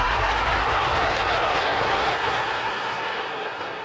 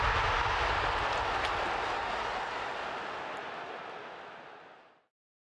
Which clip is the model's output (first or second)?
first